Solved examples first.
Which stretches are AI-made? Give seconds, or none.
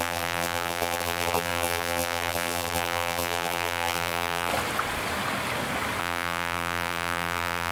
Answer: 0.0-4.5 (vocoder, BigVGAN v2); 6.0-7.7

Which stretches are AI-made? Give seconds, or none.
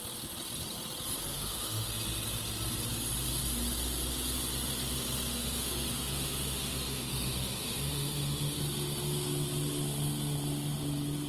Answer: 1.3-1.9 (autoencoder, DAC-VAE); 5.3-8.6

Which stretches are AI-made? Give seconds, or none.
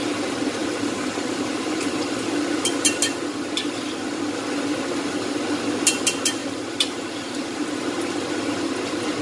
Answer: 0.6-2.9 (vocoder, BigVGAN v2); 6.4-7.9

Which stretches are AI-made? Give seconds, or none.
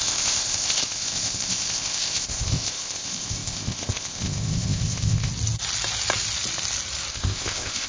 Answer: 0.0-5.3 (codec, ZipCodec); 7.1-7.9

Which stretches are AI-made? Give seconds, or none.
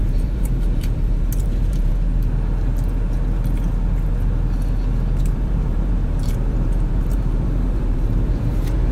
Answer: 0.0-1.9 (vocoder, BigVGAN v2); 5.2-8.9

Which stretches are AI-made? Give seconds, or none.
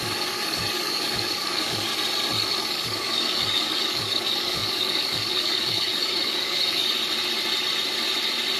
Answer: 0.0-1.9 (codec, DAC); 2.6-7.0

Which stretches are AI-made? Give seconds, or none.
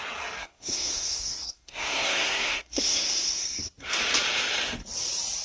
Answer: 0.4-3.6 (codec, SNAC)